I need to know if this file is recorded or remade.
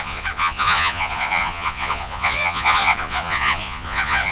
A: remade